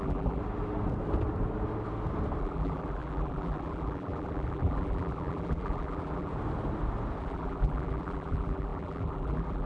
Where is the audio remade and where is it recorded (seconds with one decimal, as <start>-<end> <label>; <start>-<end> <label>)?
0.0-0.4 remade; 0.4-2.4 recorded; 2.4-6.3 remade; 6.3-7.2 recorded; 7.2-9.7 remade

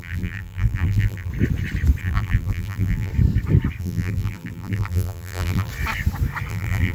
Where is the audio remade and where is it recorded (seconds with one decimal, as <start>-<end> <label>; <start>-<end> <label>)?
0.0-1.3 remade; 1.3-2.0 recorded; 2.0-3.1 remade; 3.1-3.8 recorded; 3.8-5.7 remade; 5.7-6.5 recorded; 6.5-6.9 remade

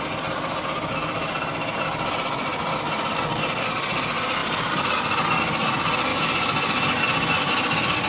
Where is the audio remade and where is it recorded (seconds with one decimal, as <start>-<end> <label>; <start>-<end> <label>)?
0.0-6.1 recorded; 6.1-7.5 remade; 7.5-8.1 recorded

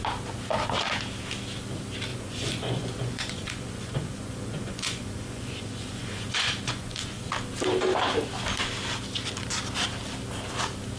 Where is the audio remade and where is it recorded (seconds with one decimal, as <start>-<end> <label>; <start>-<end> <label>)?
0.0-2.1 recorded; 2.1-7.3 remade; 7.3-11.0 recorded